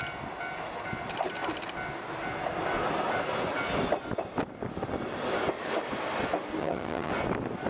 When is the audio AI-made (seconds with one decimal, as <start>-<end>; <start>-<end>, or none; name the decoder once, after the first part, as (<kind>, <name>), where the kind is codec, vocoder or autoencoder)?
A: 6.6-7.1 (vocoder, HiFi-GAN)